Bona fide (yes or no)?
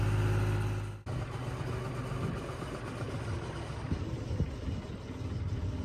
yes